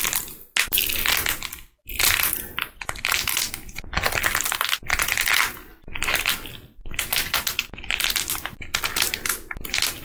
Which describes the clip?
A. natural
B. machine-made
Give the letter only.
A